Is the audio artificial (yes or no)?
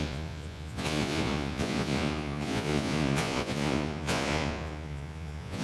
yes